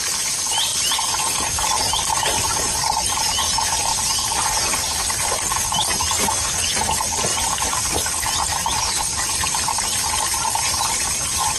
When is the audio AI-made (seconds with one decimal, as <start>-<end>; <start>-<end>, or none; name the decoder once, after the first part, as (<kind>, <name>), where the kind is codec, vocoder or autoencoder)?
none